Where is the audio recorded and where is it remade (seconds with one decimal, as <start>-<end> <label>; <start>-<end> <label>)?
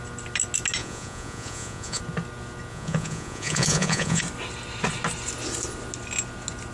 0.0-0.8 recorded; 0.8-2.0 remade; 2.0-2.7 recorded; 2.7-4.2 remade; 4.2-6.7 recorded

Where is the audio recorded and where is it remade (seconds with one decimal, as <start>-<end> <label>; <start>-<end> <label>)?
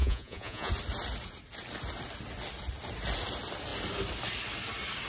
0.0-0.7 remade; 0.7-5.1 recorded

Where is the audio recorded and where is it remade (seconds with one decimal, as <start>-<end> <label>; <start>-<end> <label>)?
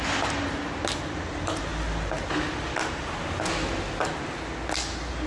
0.0-5.3 recorded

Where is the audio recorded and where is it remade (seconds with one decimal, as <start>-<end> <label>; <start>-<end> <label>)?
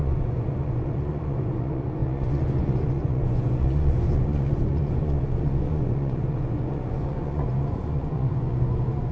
0.0-9.1 remade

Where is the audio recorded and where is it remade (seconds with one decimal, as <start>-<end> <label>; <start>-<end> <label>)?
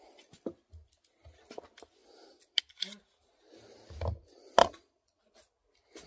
0.0-4.6 recorded; 4.6-5.2 remade; 5.2-6.1 recorded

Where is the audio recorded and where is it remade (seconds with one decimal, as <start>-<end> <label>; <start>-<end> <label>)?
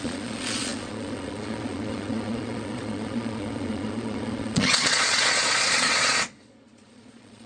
0.0-7.5 remade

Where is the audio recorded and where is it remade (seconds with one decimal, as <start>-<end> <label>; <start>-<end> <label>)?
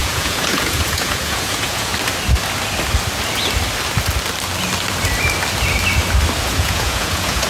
0.0-1.9 remade; 1.9-6.4 recorded; 6.4-7.5 remade